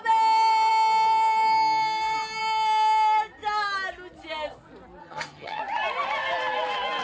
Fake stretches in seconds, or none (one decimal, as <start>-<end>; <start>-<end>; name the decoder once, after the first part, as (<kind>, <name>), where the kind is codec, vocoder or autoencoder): 5.0-5.6 (vocoder, HiFi-GAN)